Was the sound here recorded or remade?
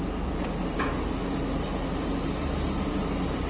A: recorded